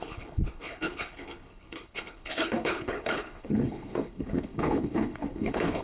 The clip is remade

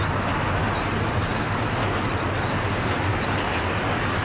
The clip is recorded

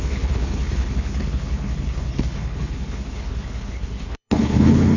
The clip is remade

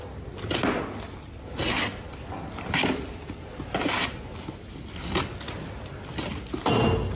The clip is recorded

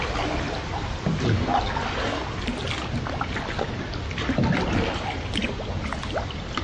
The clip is recorded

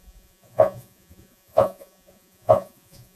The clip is remade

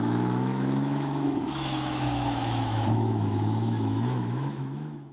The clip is remade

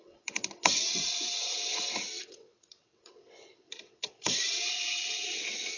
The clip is remade